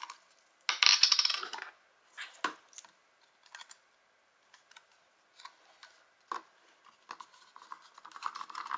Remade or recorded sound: recorded